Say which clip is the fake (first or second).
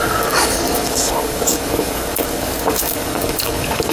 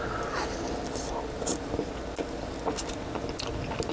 first